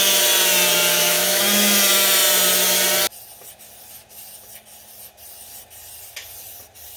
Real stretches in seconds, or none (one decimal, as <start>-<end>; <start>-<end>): 0.0-0.9; 1.4-7.0